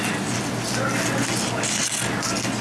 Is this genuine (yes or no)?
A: yes